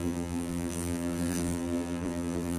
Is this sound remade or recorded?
remade